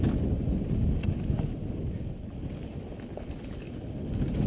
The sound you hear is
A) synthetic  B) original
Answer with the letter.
B